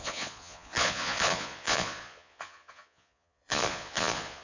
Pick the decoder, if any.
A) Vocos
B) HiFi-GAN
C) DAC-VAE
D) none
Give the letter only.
A